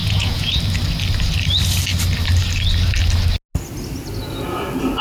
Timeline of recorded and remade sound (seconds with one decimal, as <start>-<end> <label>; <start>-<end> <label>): 0.0-0.6 remade; 0.6-5.0 recorded